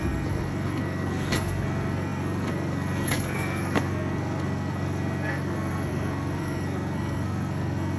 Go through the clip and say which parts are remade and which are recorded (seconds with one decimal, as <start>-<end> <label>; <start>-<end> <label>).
0.0-8.0 remade